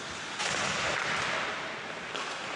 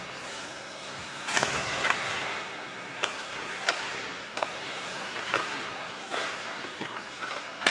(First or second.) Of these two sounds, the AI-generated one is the second